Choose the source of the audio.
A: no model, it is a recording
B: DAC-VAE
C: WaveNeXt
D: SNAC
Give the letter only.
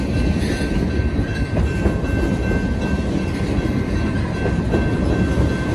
A